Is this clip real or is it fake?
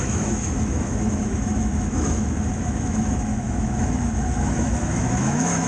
fake